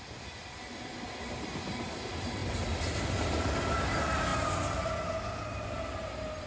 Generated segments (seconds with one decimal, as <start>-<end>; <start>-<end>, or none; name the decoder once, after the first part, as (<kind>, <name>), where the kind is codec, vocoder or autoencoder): none